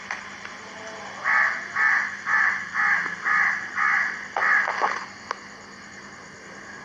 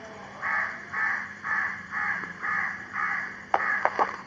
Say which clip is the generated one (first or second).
second